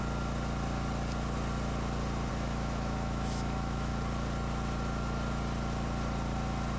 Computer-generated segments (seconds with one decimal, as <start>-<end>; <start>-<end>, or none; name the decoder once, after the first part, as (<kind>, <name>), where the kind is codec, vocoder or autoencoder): 2.3-3.9 (autoencoder, DAC-VAE)